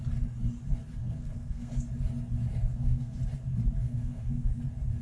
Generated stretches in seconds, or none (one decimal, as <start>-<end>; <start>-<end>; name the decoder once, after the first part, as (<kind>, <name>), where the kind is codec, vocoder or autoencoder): 1.0-1.7 (codec, SNAC); 2.6-3.2; 3.8-4.6